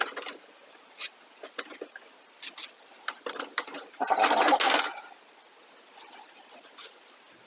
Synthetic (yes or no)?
no